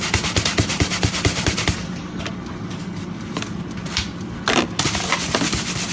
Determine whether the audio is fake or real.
real